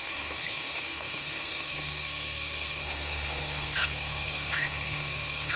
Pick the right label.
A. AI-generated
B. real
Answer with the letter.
A